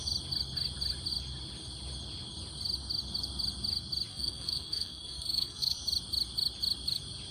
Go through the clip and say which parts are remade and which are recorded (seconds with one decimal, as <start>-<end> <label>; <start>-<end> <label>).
0.0-4.1 recorded; 4.1-5.8 remade; 5.8-7.3 recorded